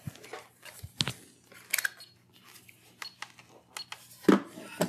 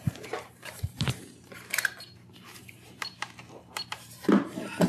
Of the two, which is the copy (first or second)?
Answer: second